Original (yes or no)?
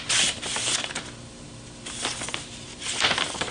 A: yes